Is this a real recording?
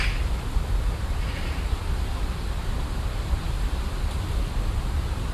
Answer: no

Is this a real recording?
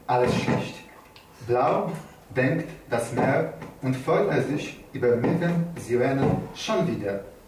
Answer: yes